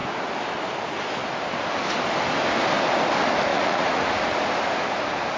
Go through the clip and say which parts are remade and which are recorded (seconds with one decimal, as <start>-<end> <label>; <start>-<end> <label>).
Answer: 0.0-3.5 recorded; 3.5-4.4 remade; 4.4-5.4 recorded